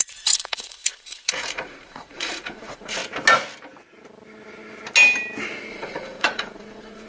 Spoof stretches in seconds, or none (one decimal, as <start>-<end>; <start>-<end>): 0.0-3.0; 5.7-7.1